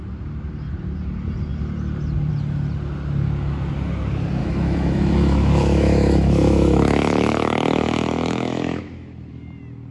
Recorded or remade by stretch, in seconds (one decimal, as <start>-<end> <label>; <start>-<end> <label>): 0.0-4.4 recorded; 4.4-8.8 remade; 8.8-9.9 recorded